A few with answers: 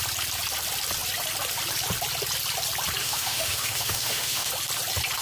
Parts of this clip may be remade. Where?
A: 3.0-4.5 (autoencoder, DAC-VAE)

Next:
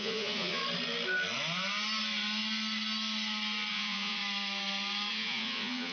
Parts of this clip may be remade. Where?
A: 0.0-0.6 (vocoder, Vocos); 3.7-4.2; 5.1-5.9

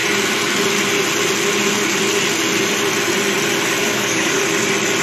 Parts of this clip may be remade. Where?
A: 3.8-4.4 (codec, DAC)

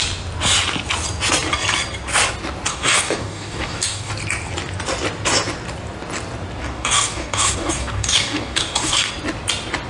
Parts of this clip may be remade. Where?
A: 2.7-4.1 (codec, DAC); 6.6-9.1